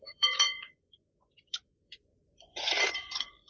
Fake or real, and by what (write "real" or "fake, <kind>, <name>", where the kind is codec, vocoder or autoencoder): fake, vocoder, Vocos